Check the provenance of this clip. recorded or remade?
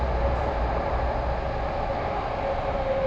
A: recorded